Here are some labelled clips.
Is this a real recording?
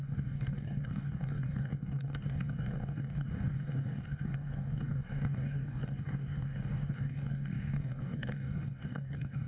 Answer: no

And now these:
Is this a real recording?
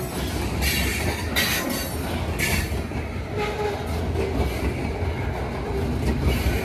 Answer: yes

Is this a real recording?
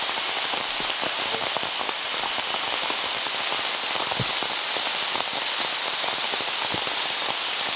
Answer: yes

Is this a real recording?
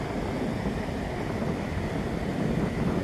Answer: yes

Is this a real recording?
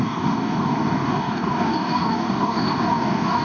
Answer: no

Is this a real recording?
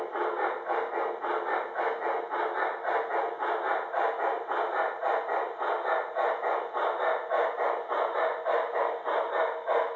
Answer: yes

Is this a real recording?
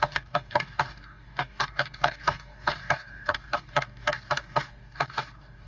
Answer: no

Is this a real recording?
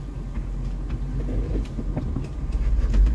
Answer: yes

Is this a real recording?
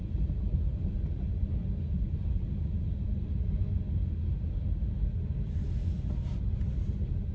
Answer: yes